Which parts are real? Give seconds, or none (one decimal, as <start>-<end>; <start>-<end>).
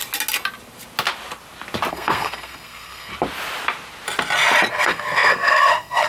0.0-1.9; 3.1-4.7